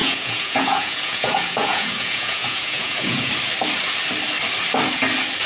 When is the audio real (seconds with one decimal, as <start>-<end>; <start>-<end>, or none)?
3.3-5.5